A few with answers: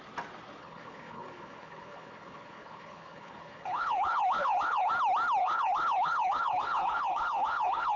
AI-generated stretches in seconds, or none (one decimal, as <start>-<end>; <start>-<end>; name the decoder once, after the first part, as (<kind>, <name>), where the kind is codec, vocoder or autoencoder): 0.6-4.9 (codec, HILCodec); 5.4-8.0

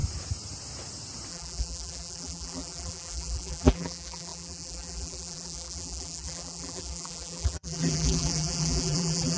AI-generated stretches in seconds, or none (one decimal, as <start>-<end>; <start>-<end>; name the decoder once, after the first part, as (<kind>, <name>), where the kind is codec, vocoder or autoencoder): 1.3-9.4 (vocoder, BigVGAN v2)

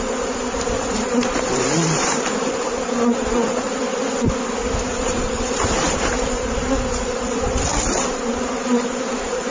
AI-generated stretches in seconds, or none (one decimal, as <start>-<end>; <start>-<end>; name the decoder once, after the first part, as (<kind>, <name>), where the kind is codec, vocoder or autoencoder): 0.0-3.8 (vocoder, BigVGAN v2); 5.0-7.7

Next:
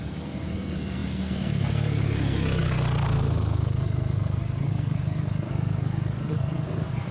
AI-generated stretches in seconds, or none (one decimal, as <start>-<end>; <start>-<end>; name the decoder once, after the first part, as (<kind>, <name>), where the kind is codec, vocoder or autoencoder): 0.0-7.1 (codec, SNAC)